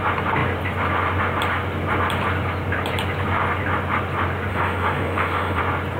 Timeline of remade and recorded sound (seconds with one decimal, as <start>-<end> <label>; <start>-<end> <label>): 0.0-4.5 recorded; 4.5-5.6 remade; 5.6-6.0 recorded